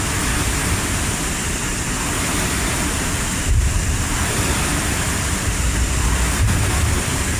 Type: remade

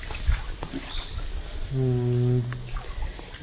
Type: recorded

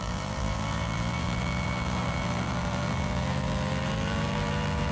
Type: remade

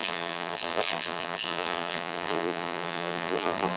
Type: remade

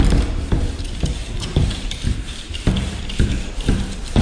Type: remade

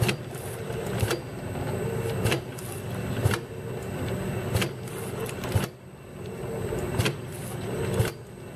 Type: recorded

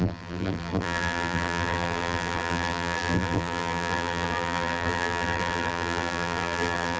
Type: remade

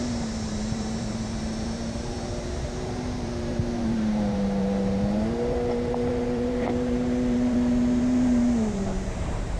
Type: remade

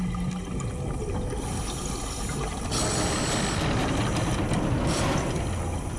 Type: recorded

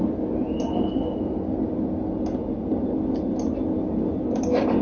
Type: recorded